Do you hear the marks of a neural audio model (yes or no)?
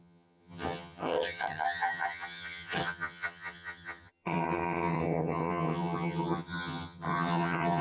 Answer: yes